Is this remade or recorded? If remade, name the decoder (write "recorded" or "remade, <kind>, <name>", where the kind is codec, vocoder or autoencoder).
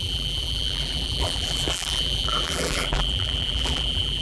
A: remade, vocoder, BigVGAN v2